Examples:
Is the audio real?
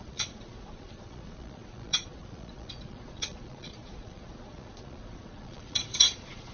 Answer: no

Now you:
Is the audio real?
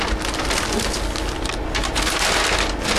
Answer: yes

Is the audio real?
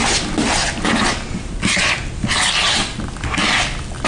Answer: yes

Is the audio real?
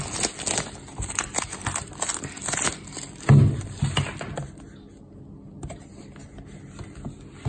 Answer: yes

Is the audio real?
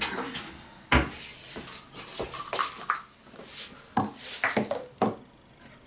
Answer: yes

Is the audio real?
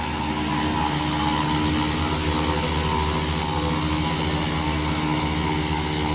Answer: yes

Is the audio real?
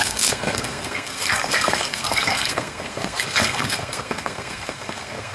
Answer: no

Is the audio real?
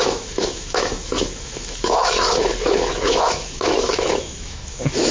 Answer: no